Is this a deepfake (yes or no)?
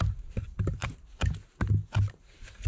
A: no